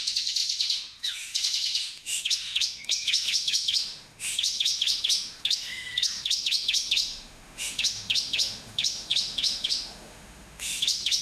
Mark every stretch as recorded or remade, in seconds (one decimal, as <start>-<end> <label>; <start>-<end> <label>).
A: 0.0-11.2 remade